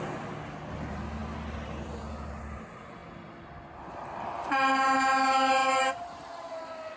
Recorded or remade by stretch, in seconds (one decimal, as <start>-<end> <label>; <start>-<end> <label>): 0.0-7.0 recorded

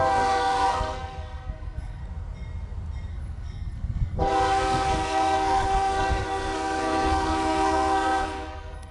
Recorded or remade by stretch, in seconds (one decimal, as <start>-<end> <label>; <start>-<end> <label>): 0.0-2.0 remade; 2.0-3.1 recorded; 3.1-8.9 remade

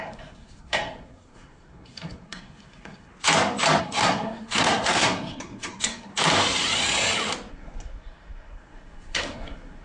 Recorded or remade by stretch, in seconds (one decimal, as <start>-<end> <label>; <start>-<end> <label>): 0.0-3.1 remade; 3.1-3.8 recorded; 3.8-6.1 remade; 6.1-7.5 recorded; 7.5-9.8 remade

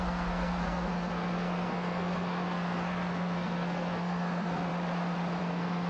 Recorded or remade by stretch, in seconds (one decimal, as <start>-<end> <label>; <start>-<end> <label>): 0.0-4.7 remade; 4.7-5.4 recorded; 5.4-5.9 remade

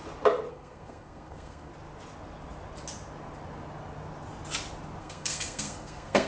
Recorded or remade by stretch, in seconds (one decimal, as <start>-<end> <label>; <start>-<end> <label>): 0.0-0.5 recorded; 0.5-1.7 remade; 1.7-5.0 recorded; 5.0-6.3 remade